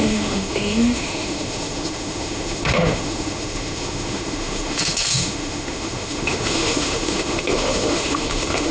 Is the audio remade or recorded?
remade